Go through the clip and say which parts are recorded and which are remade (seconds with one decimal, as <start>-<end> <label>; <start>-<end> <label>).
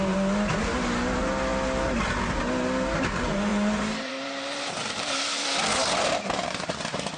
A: 0.0-3.5 recorded; 3.5-6.6 remade; 6.6-7.2 recorded